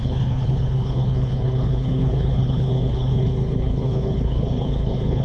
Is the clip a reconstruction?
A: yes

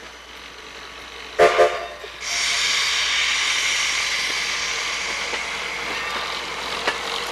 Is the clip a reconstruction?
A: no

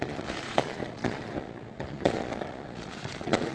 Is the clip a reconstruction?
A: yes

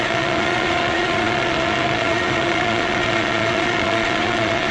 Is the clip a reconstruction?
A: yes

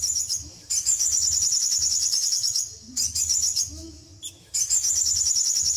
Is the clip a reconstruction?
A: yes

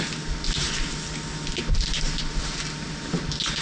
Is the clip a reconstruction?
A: no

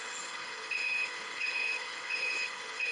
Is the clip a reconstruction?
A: yes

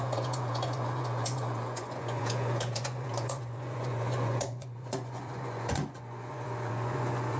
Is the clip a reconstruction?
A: yes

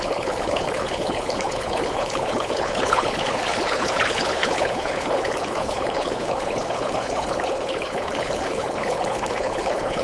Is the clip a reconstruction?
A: yes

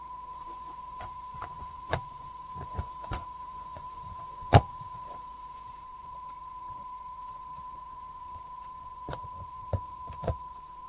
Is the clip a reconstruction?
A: yes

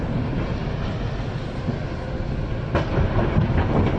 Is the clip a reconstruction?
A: no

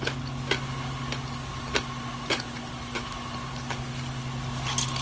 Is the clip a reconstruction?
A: no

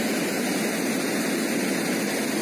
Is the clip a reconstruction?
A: no